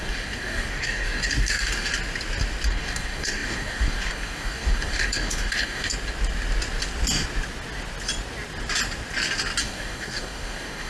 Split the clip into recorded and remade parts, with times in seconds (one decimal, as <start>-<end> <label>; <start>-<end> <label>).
0.0-1.9 remade; 1.9-2.7 recorded; 2.7-5.9 remade; 5.9-9.6 recorded; 9.6-10.9 remade